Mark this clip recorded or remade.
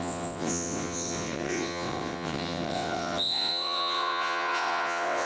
remade